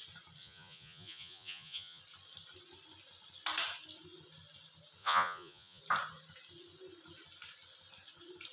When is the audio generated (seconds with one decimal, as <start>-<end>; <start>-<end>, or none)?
0.4-2.0; 5.0-5.8